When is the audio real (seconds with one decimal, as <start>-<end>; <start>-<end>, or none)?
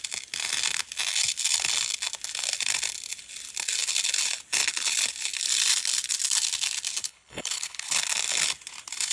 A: 0.0-7.0; 7.9-9.1